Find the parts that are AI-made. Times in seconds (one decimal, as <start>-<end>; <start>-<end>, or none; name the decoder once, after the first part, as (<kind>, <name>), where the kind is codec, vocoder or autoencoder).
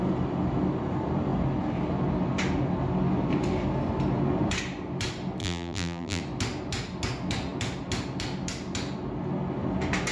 5.4-6.2 (vocoder, BigVGAN v2)